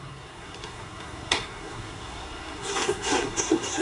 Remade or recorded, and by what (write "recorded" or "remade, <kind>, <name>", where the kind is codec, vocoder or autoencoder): remade, codec, SNAC